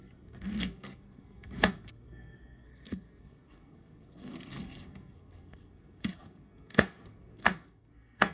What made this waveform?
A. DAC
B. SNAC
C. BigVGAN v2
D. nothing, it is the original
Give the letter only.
B